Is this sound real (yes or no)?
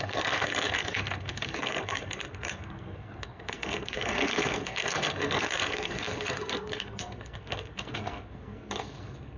no